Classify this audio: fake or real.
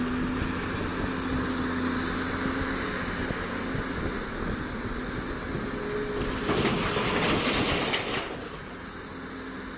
real